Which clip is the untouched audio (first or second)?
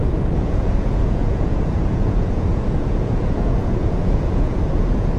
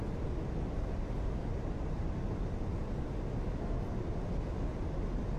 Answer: second